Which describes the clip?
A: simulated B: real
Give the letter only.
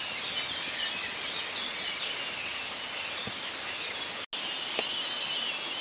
B